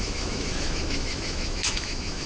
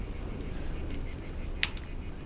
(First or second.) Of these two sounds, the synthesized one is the first